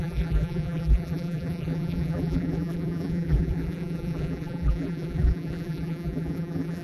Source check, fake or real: fake